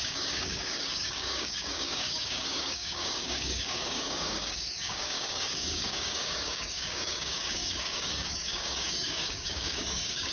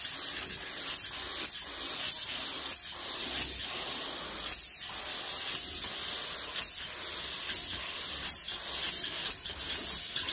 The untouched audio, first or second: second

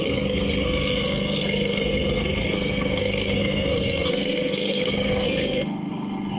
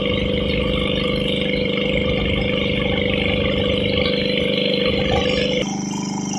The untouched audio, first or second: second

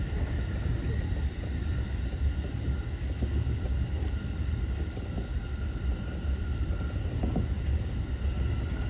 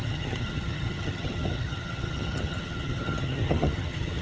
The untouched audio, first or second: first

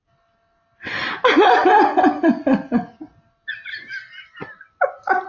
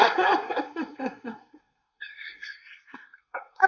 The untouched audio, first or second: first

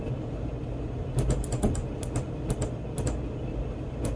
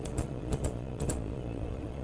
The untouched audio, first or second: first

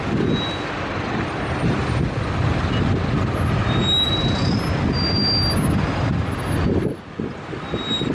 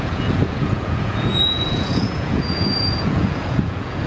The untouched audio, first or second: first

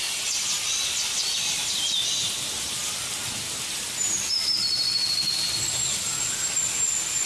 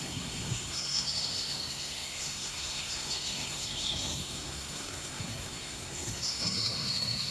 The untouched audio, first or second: first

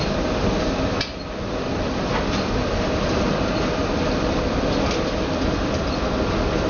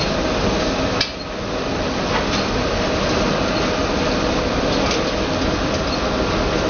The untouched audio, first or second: second